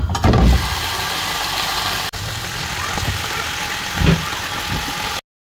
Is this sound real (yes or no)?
yes